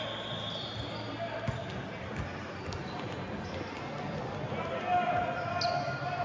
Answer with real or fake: real